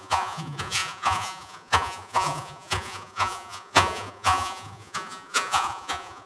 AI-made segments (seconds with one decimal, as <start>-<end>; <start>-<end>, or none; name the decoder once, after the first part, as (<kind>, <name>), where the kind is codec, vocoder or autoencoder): 0.0-6.3 (vocoder, Vocos)

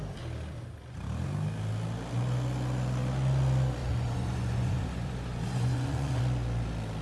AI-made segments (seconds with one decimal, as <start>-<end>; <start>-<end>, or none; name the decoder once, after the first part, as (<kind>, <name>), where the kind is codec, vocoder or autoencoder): 3.8-6.2 (vocoder, Vocos)